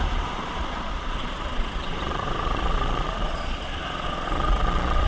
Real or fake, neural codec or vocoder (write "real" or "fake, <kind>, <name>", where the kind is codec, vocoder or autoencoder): fake, vocoder, Vocos